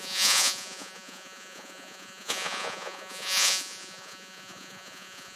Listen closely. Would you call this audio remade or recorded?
remade